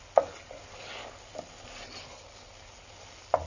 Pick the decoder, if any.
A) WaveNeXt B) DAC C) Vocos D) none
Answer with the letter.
D